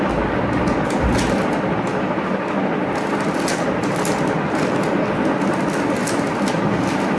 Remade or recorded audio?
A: recorded